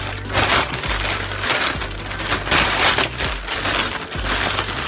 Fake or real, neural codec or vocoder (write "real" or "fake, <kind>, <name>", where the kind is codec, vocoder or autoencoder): real